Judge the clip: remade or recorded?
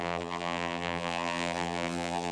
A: remade